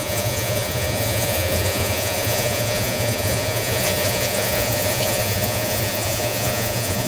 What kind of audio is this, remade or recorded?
remade